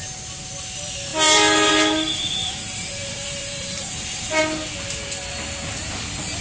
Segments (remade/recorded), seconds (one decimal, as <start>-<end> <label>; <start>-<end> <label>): 0.0-1.1 recorded; 1.1-4.4 remade; 4.4-6.4 recorded